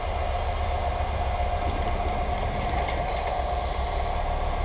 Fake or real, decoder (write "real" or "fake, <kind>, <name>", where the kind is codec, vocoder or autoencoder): real